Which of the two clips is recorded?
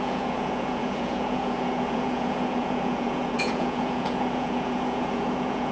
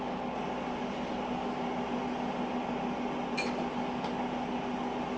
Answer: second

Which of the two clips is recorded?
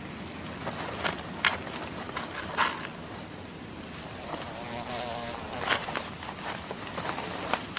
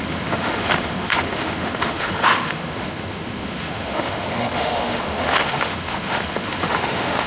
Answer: first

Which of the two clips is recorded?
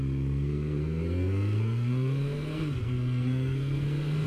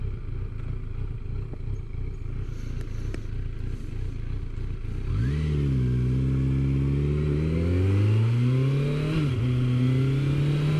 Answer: second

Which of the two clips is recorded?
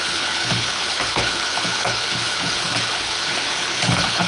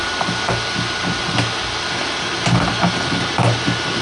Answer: second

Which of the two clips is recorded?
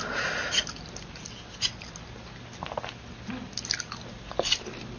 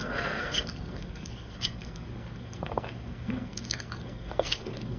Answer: first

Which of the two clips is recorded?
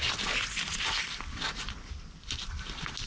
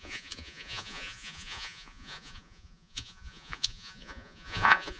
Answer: first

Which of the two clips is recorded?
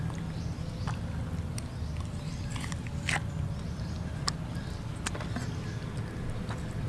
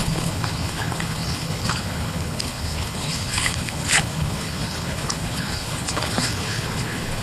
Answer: first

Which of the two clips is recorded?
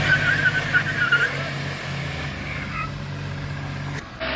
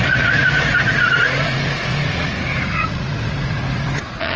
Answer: first